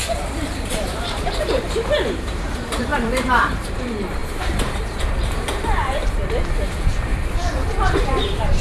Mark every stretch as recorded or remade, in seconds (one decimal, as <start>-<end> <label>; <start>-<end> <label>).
0.0-7.1 remade; 7.1-8.0 recorded; 8.0-8.6 remade